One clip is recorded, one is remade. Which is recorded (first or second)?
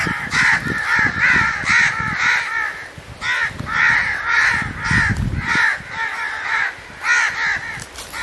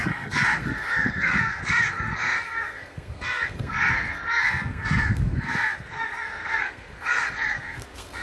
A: first